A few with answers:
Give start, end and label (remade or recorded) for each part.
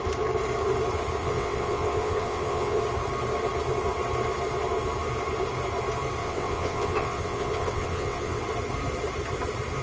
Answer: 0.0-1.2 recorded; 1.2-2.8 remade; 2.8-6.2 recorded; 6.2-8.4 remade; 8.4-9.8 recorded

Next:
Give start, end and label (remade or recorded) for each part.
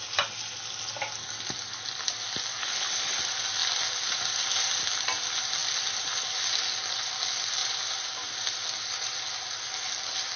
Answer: 0.0-2.6 recorded; 2.6-3.2 remade; 3.2-10.4 recorded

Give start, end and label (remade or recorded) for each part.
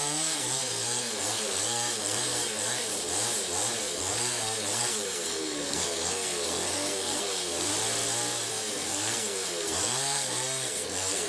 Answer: 0.0-2.9 remade; 2.9-3.8 recorded; 3.8-7.7 remade; 7.7-8.5 recorded; 8.5-11.3 remade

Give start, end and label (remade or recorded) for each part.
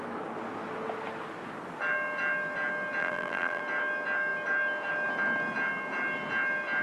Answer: 0.0-3.0 recorded; 3.0-3.6 remade; 3.6-6.8 recorded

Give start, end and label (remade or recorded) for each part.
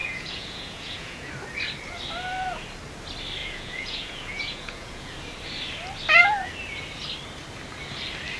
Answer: 0.0-1.3 remade; 1.3-3.4 recorded; 3.4-5.1 remade; 5.1-8.4 recorded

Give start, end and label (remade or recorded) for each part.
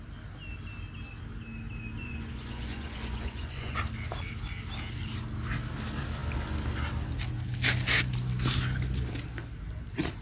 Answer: 0.0-2.0 recorded; 2.0-3.8 remade; 3.8-10.2 recorded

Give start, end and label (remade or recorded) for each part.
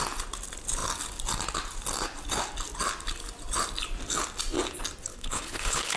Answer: 0.0-5.1 recorded; 5.1-6.0 remade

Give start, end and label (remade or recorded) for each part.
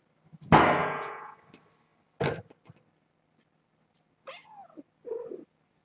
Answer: 0.0-0.8 recorded; 0.8-1.4 remade; 1.4-5.8 recorded